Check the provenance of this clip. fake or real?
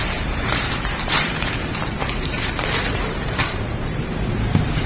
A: fake